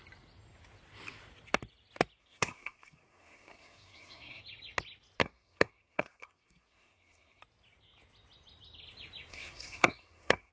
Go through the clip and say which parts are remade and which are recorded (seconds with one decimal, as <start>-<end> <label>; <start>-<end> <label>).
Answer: 0.0-2.2 recorded; 2.2-4.4 remade; 4.4-5.2 recorded; 5.2-7.4 remade; 7.4-9.3 recorded; 9.3-10.5 remade